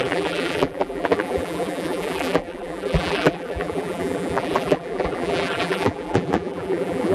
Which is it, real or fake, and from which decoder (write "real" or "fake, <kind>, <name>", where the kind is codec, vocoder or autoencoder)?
fake, vocoder, BigVGAN v2